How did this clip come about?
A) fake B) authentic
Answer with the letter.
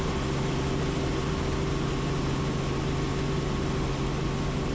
B